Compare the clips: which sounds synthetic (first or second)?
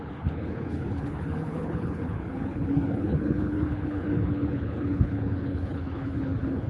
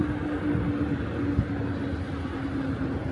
first